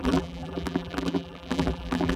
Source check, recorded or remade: remade